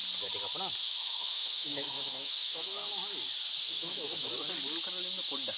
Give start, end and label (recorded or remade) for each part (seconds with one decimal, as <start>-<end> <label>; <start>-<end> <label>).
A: 0.0-0.8 recorded; 0.8-2.9 remade; 2.9-3.6 recorded; 3.6-4.3 remade; 4.3-5.6 recorded